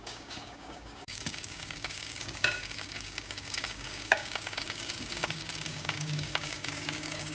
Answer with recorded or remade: remade